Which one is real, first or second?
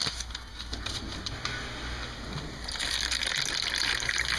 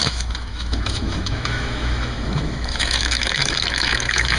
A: first